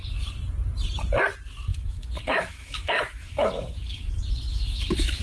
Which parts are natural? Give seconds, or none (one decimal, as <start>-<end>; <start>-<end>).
0.0-1.7; 4.1-4.5